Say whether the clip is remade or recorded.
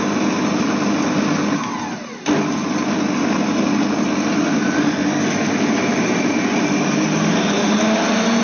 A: recorded